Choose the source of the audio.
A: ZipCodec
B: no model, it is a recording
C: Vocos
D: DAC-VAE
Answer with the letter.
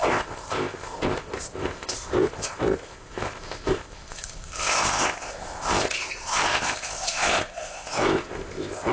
A